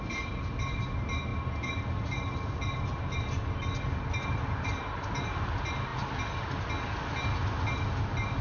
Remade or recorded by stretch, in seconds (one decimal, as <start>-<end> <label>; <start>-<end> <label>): 0.0-8.4 recorded